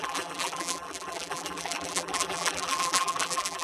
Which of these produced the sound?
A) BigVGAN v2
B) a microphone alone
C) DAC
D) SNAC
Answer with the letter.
A